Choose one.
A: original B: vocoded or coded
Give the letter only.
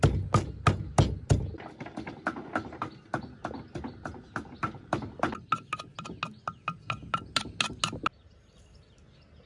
A